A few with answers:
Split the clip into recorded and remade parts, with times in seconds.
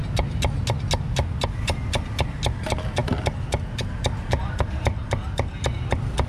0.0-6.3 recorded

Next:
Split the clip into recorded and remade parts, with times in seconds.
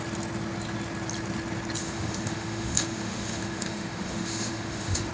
0.0-1.8 recorded; 1.8-5.1 remade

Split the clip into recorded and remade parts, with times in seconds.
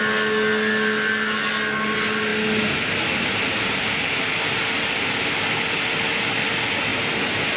0.0-7.6 recorded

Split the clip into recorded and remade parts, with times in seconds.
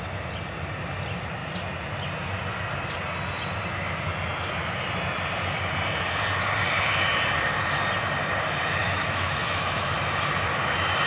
0.0-8.8 recorded; 8.8-9.9 remade; 9.9-11.1 recorded